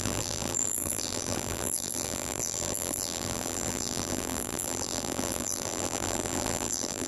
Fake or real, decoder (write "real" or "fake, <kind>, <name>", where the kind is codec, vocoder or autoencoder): fake, vocoder, BigVGAN v2